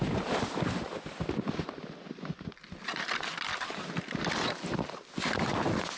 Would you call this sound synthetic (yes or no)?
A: no